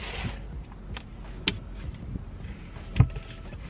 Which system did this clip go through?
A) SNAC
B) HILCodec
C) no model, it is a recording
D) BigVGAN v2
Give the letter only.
C